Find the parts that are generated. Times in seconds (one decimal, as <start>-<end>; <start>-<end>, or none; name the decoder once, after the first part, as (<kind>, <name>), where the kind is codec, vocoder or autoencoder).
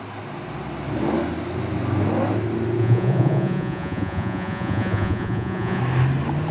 2.8-5.8 (vocoder, Vocos)